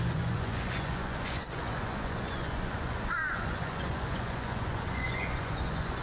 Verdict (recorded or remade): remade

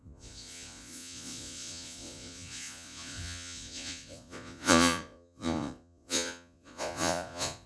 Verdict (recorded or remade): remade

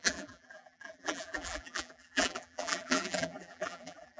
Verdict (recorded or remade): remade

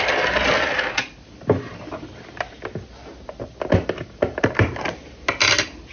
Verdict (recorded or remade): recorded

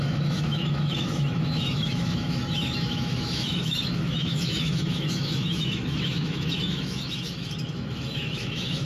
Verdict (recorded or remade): remade